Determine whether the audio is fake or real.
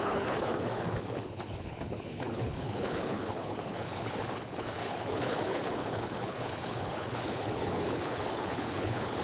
fake